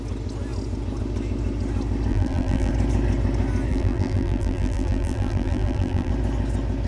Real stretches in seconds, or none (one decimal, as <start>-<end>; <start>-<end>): 0.0-2.1; 2.7-3.7; 6.1-6.9